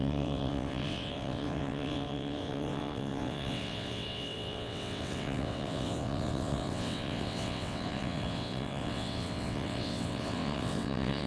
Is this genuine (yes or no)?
no